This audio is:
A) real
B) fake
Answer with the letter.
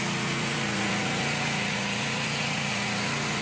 B